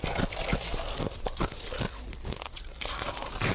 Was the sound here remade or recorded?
recorded